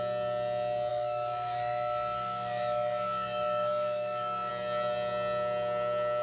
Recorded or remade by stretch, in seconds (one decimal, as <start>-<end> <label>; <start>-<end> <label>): 0.0-0.9 recorded; 0.9-4.5 remade; 4.5-6.2 recorded